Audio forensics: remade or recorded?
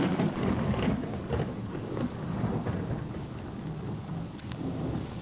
remade